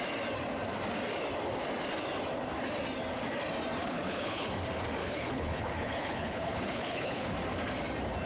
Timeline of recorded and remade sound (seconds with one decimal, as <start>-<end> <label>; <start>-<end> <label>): 0.0-3.8 recorded; 3.8-4.5 remade; 4.5-5.0 recorded; 5.0-7.3 remade; 7.3-8.3 recorded